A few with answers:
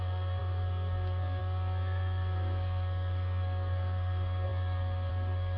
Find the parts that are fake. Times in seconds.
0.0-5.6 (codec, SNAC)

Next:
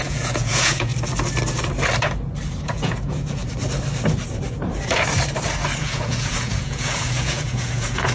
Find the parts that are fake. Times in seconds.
0.0-0.9 (vocoder, Vocos); 2.6-3.4; 5.8-8.1

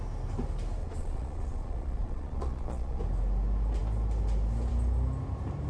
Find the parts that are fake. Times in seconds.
0.8-3.0 (vocoder, Vocos)

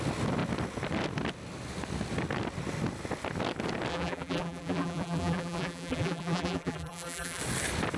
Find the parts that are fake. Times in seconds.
3.9-7.4 (vocoder, BigVGAN v2)

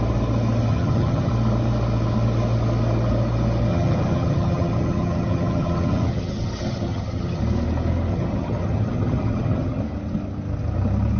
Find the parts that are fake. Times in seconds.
0.7-1.3 (vocoder, HiFi-GAN); 3.7-7.4; 8.1-9.8